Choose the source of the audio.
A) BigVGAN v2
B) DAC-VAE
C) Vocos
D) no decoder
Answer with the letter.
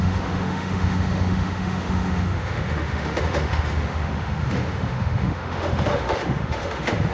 B